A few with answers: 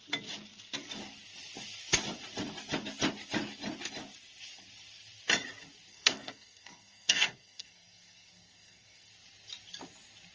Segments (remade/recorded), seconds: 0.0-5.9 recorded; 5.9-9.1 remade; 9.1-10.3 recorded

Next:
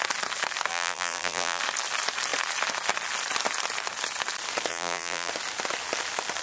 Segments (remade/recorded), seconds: 0.0-0.7 recorded; 0.7-1.6 remade; 1.6-4.7 recorded; 4.7-5.3 remade; 5.3-6.4 recorded